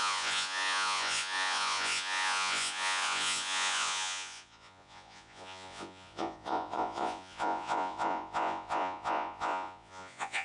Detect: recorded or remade remade